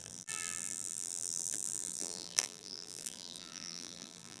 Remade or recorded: remade